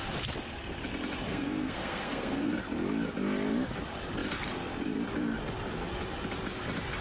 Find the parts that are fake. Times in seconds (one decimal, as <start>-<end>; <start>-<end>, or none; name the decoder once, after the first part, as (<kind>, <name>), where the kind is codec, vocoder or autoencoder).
1.3-2.5 (codec, SNAC)